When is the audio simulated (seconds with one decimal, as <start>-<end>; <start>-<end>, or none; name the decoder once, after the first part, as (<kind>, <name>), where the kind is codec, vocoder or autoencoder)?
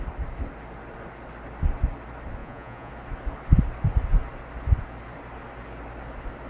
2.4-2.9 (vocoder, Vocos)